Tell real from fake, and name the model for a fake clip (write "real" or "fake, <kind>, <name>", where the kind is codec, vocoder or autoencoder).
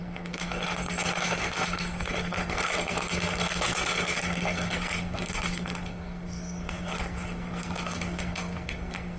fake, codec, SNAC